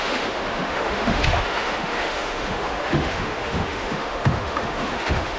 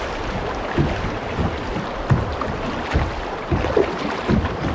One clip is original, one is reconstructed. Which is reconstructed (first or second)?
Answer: first